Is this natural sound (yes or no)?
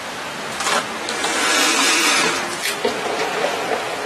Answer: yes